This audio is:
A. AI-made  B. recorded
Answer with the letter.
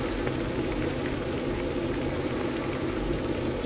B